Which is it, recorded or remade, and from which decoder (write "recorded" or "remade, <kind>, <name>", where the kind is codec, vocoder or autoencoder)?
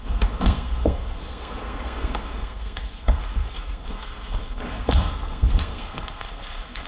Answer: remade, codec, SNAC